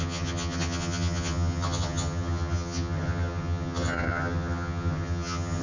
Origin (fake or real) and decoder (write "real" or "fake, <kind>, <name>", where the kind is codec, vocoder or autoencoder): fake, vocoder, HiFi-GAN